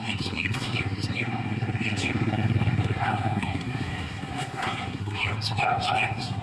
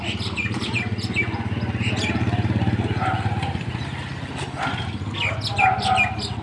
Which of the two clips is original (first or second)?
second